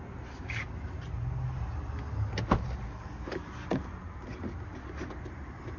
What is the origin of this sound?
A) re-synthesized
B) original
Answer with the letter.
B